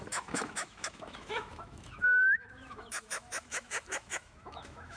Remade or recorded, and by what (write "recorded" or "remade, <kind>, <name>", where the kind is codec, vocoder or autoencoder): remade, autoencoder, DAC-VAE